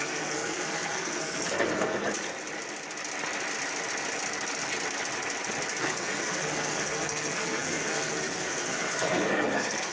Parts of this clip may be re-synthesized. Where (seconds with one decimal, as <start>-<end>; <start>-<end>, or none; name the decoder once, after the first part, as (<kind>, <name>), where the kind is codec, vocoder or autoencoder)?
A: 0.0-2.0 (codec, SNAC); 5.8-9.9